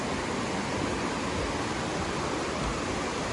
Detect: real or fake real